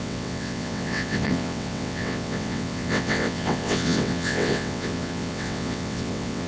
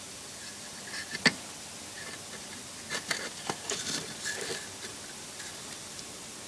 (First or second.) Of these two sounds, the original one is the second